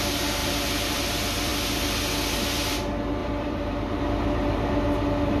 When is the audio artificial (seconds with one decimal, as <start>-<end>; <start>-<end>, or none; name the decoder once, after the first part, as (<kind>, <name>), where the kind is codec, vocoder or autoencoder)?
0.4-1.0 (vocoder, BigVGAN v2); 3.2-4.0